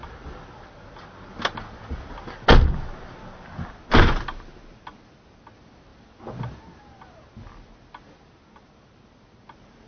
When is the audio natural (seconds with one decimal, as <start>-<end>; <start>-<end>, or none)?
0.0-9.9